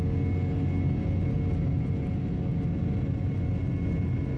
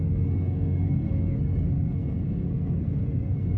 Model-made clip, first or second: second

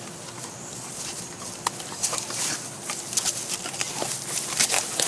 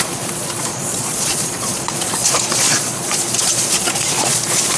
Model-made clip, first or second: second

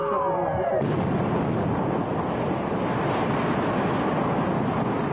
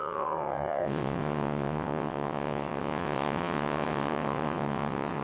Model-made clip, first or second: second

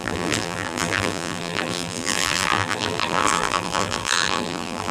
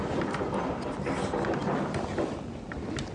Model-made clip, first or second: first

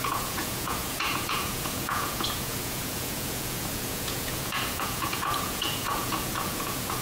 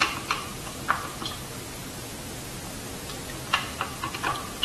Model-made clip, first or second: first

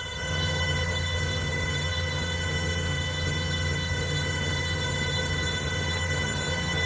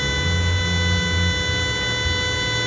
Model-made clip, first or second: first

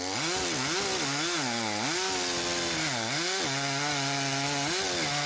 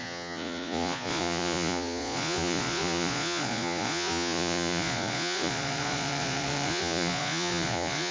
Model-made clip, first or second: second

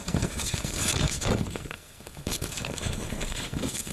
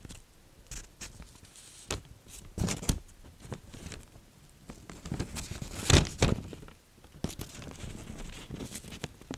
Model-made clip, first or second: first